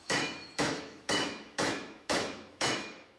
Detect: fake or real fake